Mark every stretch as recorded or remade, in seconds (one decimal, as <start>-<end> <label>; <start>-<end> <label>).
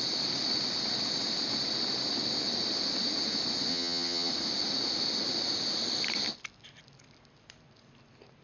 0.0-3.7 recorded; 3.7-4.3 remade; 4.3-8.4 recorded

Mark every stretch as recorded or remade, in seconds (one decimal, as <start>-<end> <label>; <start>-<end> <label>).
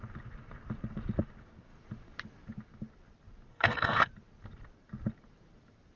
0.0-3.5 recorded; 3.5-4.1 remade; 4.1-6.0 recorded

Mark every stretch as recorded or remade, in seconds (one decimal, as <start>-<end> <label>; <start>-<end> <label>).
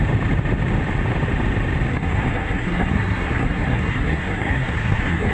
0.0-1.9 recorded; 1.9-5.3 remade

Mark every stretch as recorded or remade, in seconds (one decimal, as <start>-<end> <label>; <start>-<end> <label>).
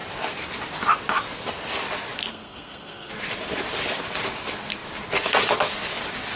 0.0-2.3 recorded; 2.3-3.1 remade; 3.1-6.4 recorded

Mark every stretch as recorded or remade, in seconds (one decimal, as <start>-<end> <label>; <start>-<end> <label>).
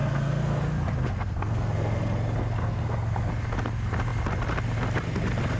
0.0-0.6 remade; 0.6-1.0 recorded; 1.0-2.0 remade; 2.0-2.6 recorded; 2.6-3.3 remade; 3.3-5.6 recorded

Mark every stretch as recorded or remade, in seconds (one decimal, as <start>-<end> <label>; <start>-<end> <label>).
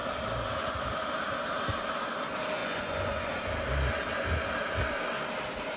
0.0-2.6 recorded; 2.6-3.5 remade; 3.5-5.8 recorded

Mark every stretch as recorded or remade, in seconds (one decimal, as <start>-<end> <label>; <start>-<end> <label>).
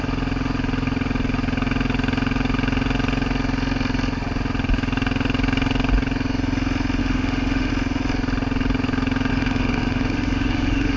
0.0-7.0 recorded; 7.0-7.7 remade; 7.7-9.3 recorded; 9.3-11.0 remade